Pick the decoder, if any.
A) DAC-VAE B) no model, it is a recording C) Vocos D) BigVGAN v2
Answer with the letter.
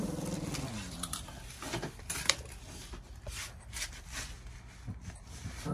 B